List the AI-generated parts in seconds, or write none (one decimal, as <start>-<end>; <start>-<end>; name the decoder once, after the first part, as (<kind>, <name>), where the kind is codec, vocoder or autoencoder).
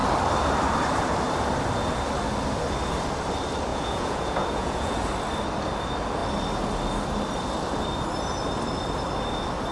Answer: 3.7-5.1 (vocoder, Vocos)